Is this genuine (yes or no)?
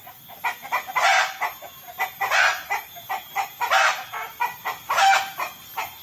yes